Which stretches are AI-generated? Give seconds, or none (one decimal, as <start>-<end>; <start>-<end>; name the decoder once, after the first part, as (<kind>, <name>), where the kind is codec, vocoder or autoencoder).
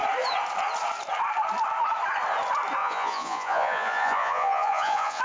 2.8-5.2 (vocoder, Vocos)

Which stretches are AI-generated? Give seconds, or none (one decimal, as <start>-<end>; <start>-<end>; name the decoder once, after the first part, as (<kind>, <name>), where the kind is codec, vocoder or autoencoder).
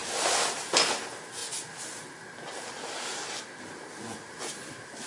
none